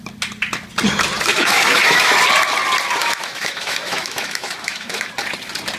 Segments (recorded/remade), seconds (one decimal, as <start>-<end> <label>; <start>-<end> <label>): 0.0-1.3 recorded; 1.3-2.2 remade; 2.2-3.0 recorded; 3.0-5.1 remade; 5.1-5.8 recorded